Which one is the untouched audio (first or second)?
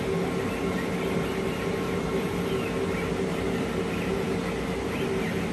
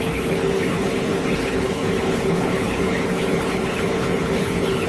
first